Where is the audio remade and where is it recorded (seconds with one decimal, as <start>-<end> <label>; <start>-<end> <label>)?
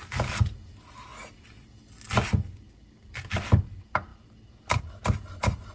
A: 0.0-5.7 recorded